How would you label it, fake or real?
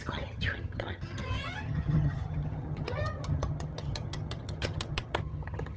fake